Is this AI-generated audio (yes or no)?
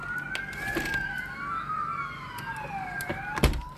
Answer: no